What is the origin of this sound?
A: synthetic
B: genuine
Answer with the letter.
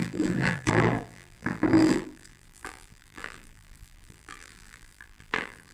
A